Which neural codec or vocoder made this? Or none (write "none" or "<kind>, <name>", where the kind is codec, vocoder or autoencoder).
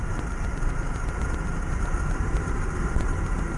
none